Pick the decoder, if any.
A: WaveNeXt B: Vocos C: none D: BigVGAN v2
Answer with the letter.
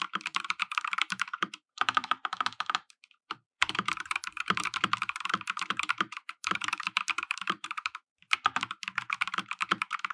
D